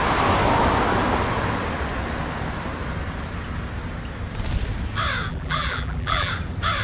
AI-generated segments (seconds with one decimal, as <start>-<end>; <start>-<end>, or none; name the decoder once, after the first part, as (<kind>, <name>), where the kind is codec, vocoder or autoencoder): 5.3-6.3 (vocoder, BigVGAN v2)